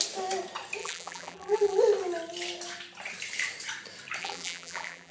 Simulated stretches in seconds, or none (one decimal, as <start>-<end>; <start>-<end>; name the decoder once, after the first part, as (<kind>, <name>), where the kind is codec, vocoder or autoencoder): 0.8-1.8 (vocoder, BigVGAN v2); 4.2-5.1